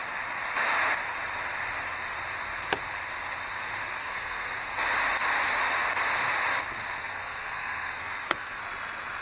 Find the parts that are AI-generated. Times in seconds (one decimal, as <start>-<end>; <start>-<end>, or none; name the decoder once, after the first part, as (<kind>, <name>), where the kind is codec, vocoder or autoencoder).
4.0-4.5 (codec, SNAC); 7.0-8.6